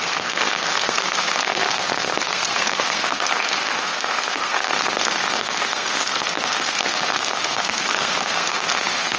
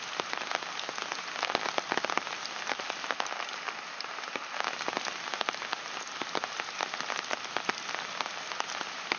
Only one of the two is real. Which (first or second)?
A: second